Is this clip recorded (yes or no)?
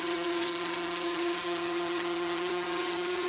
no